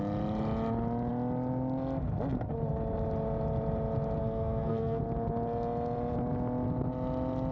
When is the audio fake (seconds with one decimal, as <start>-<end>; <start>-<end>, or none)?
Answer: 4.2-5.0